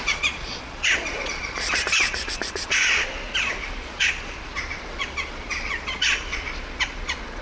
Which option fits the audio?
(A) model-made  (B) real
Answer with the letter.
A